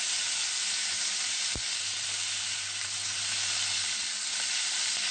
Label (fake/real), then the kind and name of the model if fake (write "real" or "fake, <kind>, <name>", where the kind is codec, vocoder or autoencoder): real